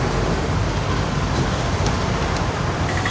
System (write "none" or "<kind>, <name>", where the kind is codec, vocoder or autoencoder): none